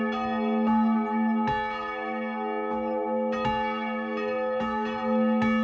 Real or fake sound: real